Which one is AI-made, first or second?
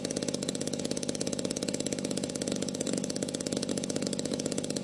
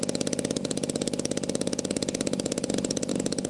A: first